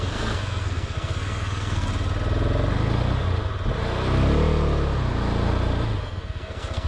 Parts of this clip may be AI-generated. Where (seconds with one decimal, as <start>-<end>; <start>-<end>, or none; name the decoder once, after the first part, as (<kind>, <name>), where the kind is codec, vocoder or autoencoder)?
0.0-1.9 (codec, SNAC); 6.0-6.9